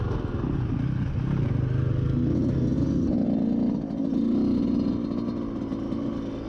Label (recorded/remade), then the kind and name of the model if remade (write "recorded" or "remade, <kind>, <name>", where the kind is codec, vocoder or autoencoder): recorded